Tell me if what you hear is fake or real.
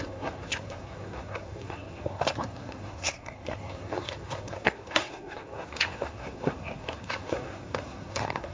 fake